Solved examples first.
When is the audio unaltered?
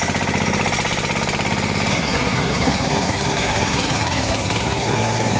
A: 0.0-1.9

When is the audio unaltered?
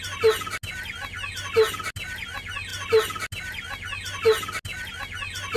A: 0.0-5.6